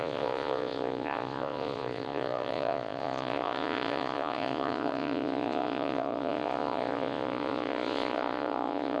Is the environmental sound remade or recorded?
remade